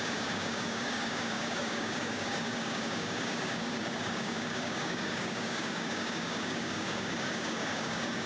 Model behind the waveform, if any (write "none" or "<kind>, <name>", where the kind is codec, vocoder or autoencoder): codec, DAC